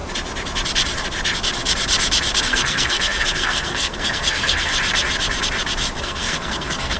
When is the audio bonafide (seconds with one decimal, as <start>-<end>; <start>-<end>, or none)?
0.0-2.4; 4.7-6.0